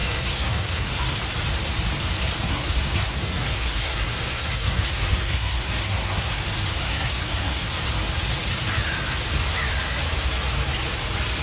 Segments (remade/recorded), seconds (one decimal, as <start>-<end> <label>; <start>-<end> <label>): 0.0-0.9 remade; 0.9-2.5 recorded; 2.5-6.4 remade; 6.4-6.9 recorded; 6.9-7.7 remade; 7.7-11.4 recorded